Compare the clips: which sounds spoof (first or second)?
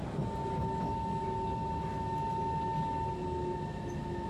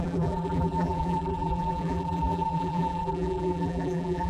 second